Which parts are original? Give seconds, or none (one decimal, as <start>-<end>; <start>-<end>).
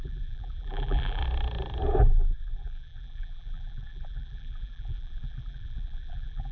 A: 1.2-2.0